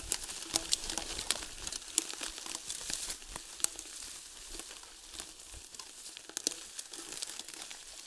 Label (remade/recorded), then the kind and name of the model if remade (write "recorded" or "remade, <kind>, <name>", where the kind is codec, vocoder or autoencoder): recorded